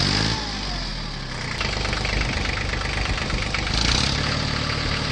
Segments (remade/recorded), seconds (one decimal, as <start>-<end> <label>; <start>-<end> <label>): 0.0-5.1 recorded